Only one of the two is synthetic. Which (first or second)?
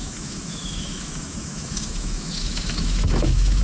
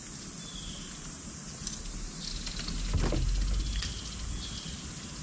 first